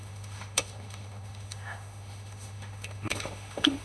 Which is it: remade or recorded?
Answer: remade